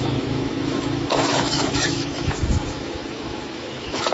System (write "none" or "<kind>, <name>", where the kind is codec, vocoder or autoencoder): autoencoder, DAC-VAE